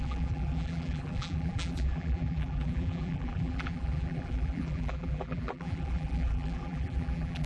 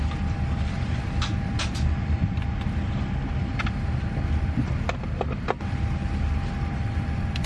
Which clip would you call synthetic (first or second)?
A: first